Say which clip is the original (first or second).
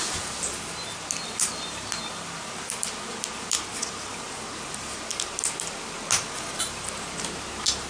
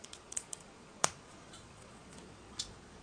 first